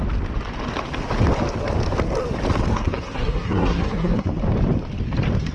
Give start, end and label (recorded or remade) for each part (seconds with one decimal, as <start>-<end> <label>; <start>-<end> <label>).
0.0-2.7 recorded; 2.7-4.3 remade; 4.3-5.5 recorded